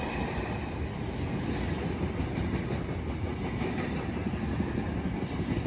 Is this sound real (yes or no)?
yes